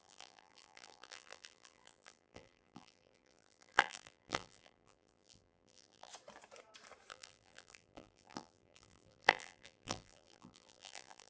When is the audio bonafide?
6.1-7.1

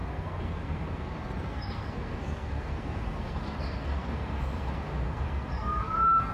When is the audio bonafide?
none

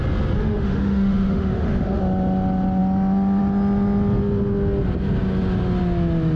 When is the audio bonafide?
0.0-0.4; 2.0-6.4

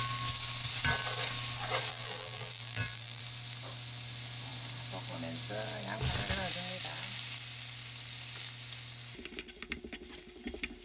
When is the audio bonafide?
0.0-1.9; 3.2-10.8

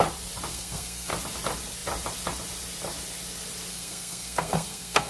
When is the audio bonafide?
0.0-0.5; 1.1-3.7

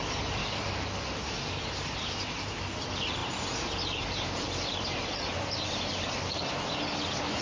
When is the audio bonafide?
0.0-0.4; 2.6-3.2; 6.4-7.4